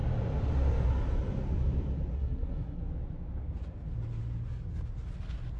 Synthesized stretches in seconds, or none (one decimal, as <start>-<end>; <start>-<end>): 2.1-2.8